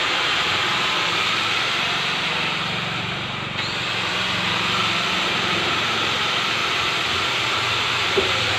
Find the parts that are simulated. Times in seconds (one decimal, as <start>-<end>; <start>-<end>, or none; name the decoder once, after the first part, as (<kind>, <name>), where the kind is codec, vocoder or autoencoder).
0.0-6.6 (vocoder, BigVGAN v2); 7.5-8.6